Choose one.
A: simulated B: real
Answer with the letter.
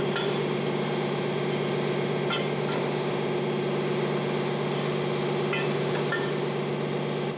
B